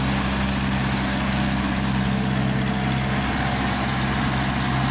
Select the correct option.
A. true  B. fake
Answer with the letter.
A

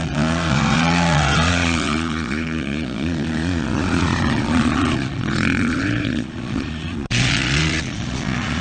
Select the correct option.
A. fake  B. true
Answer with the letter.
A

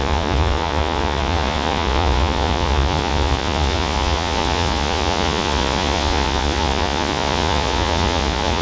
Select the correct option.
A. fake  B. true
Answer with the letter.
A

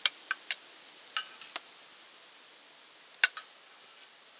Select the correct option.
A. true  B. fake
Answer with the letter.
A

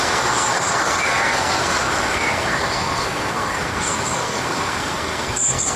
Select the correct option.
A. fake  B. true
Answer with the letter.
A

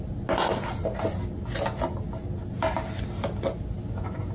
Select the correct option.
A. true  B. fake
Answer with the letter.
A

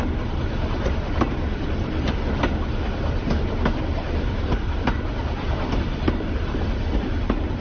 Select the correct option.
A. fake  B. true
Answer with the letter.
B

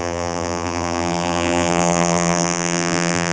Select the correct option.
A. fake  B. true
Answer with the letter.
A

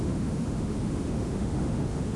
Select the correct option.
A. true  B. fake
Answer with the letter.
B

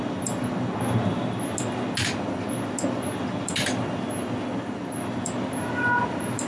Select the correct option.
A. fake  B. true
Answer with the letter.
B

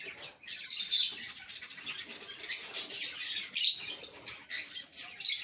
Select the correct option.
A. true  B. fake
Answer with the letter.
A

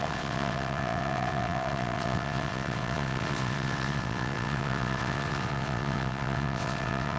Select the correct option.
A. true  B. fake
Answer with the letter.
B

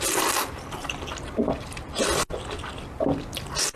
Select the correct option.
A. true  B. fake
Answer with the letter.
A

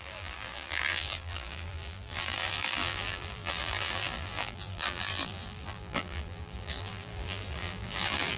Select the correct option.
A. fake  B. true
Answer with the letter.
A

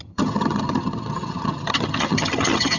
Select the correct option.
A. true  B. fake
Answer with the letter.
B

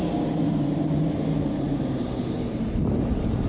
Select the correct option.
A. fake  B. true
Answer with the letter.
A